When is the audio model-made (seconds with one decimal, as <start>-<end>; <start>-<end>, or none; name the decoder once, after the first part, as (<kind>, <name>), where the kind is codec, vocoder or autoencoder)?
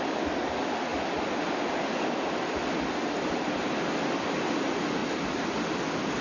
none